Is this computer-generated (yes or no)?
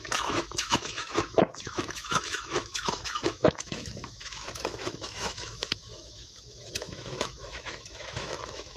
yes